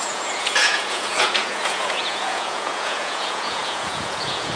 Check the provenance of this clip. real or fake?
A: fake